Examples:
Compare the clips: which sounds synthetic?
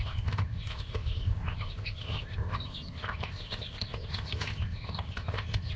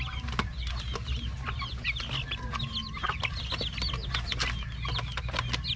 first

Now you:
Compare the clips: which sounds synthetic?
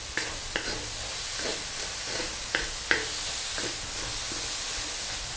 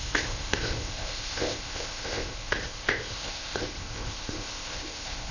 second